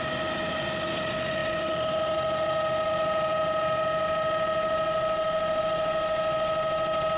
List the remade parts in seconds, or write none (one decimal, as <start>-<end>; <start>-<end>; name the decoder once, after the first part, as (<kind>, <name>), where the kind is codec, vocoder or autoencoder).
none